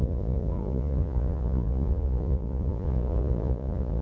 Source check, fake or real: fake